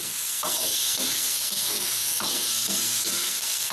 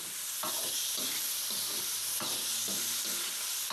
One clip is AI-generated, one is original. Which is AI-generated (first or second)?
first